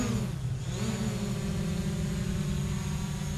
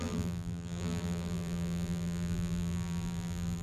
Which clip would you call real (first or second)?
first